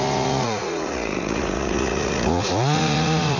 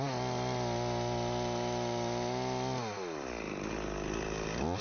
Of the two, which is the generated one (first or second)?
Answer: first